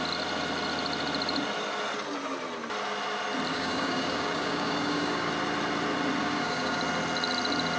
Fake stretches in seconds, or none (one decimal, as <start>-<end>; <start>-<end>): 3.5-5.3; 6.2-6.8